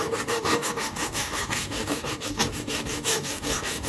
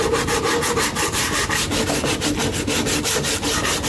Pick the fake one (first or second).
first